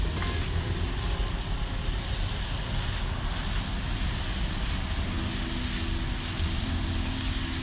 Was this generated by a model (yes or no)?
no